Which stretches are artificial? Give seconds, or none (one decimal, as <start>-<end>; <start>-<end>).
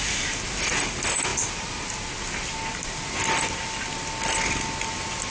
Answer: none